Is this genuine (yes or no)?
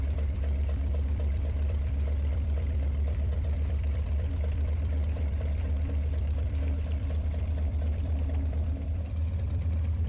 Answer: no